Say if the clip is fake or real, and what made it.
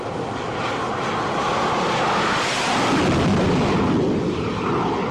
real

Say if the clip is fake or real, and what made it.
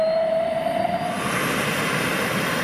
real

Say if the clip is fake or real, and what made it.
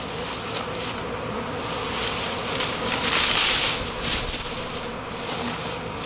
real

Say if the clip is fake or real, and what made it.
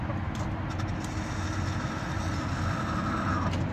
real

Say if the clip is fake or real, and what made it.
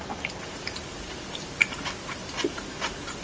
fake, vocoder, BigVGAN v2